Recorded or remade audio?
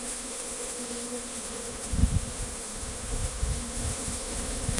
remade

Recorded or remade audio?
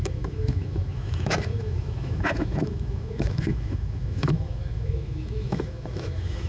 remade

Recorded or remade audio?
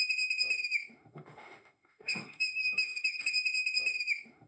remade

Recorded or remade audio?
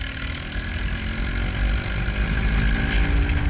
recorded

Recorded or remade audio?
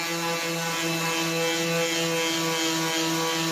recorded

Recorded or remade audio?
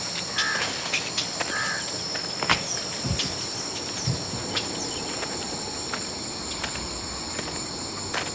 recorded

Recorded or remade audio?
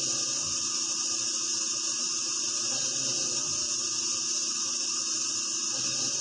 recorded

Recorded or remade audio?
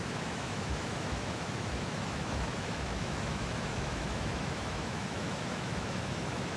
remade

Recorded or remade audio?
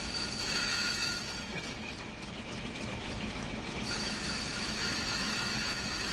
remade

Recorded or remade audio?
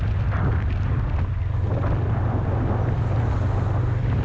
recorded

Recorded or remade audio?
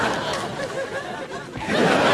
recorded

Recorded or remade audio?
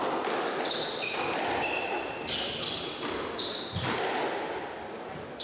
recorded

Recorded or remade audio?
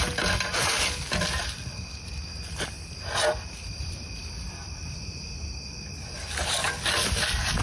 recorded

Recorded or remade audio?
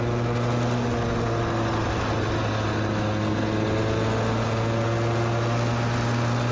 recorded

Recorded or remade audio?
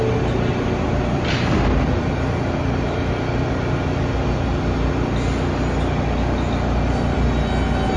recorded